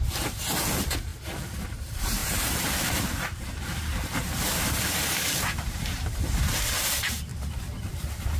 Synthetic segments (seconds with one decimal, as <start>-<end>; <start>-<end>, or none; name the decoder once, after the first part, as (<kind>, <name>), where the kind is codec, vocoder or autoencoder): 0.0-1.1 (vocoder, BigVGAN v2); 1.6-7.3; 7.9-8.4